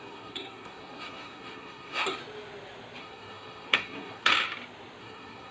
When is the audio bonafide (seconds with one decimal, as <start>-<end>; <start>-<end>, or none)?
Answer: 2.2-3.0; 4.3-5.0